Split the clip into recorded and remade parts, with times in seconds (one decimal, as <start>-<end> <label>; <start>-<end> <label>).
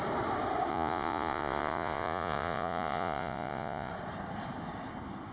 0.0-0.7 recorded; 0.7-3.9 remade; 3.9-5.3 recorded